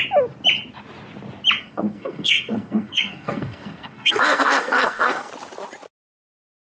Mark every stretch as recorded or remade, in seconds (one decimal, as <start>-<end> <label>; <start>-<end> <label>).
0.0-1.6 recorded; 1.6-5.3 remade; 5.3-6.7 recorded